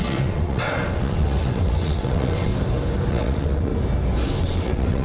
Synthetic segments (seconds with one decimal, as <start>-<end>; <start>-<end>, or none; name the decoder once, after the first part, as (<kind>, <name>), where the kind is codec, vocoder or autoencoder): 0.0-2.5 (vocoder, WaveNeXt); 3.1-3.7; 4.4-5.0